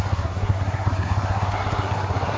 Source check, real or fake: fake